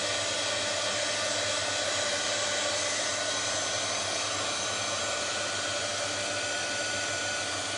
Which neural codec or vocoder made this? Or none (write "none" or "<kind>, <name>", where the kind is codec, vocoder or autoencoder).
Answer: none